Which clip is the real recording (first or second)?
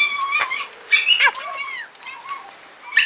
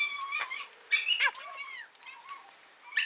first